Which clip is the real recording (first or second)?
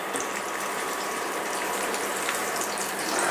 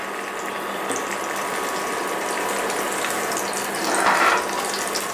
second